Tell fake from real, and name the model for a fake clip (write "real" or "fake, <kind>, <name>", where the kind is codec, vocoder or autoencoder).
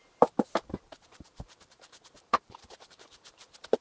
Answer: fake, vocoder, BigVGAN v2